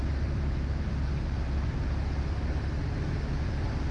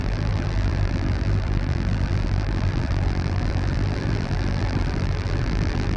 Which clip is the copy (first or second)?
second